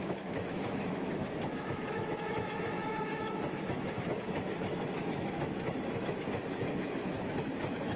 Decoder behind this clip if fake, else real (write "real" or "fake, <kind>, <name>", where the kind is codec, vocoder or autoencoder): fake, autoencoder, DAC-VAE